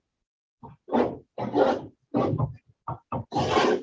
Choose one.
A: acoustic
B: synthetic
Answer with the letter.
A